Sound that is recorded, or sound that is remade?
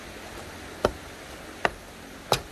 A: recorded